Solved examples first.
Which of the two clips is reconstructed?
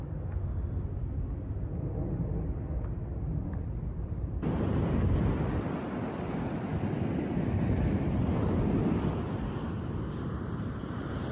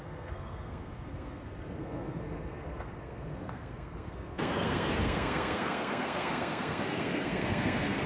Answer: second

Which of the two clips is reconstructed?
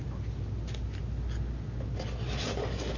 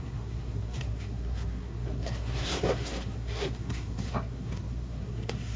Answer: second